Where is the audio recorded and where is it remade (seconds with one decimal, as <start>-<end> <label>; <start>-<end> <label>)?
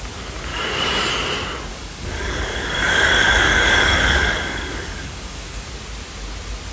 0.0-0.5 recorded; 0.5-1.1 remade; 1.1-1.7 recorded; 1.7-5.7 remade; 5.7-6.7 recorded